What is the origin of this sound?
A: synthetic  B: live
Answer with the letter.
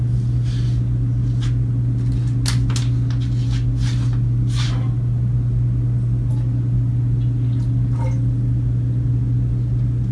B